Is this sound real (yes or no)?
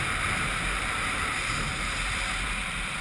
yes